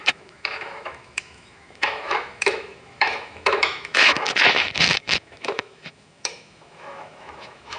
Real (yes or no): no